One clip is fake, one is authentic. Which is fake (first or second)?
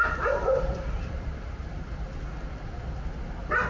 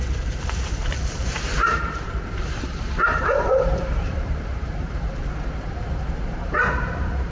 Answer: second